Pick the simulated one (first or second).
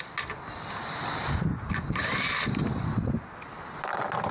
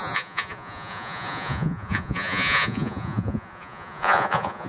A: second